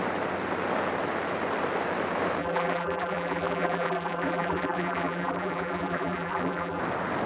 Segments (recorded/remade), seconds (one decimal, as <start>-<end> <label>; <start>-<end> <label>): 0.0-2.4 recorded; 2.4-6.8 remade; 6.8-7.3 recorded